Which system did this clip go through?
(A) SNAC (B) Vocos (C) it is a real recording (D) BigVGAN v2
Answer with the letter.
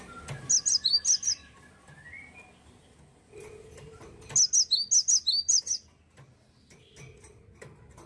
C